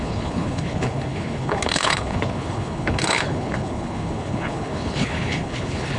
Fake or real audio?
fake